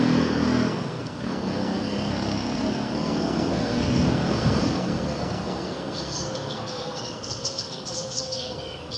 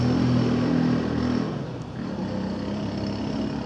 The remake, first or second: first